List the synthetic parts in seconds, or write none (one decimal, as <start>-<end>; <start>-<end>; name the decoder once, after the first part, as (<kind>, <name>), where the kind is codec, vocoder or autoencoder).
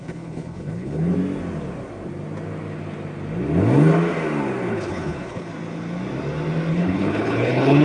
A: 0.0-1.1 (codec, HILCodec); 4.7-5.5; 6.7-7.8